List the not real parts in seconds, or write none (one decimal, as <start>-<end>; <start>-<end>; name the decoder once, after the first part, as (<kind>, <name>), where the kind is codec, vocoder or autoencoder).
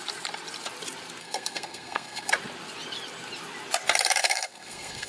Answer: 1.2-2.3 (codec, SNAC); 4.2-5.1